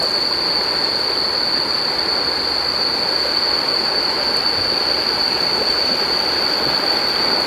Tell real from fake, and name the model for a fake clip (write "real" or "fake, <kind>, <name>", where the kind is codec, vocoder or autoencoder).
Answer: real